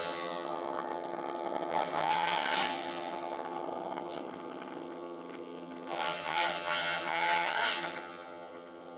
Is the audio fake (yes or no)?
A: yes